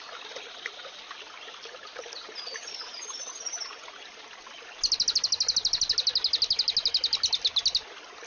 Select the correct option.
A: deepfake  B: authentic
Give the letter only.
B